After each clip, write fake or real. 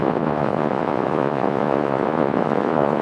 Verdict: fake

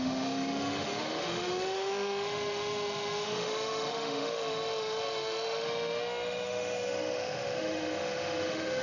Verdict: fake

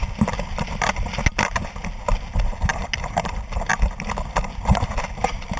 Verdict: real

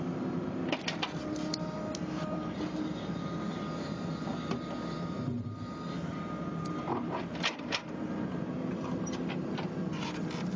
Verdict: real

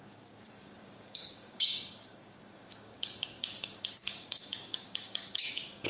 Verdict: fake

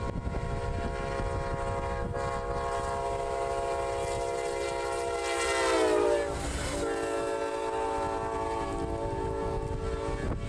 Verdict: real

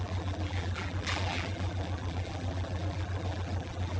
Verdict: fake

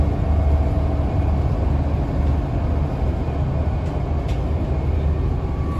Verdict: real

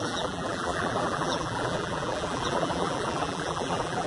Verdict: fake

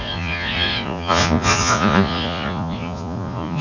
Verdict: fake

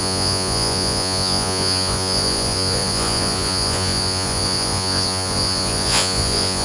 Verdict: fake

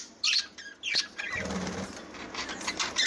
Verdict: real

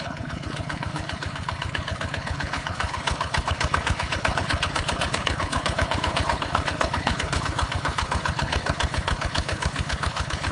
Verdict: fake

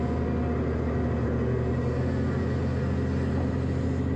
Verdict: real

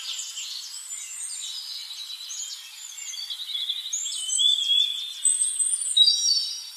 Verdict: real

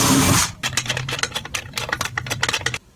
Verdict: fake